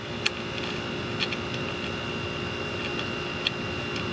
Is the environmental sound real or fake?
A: real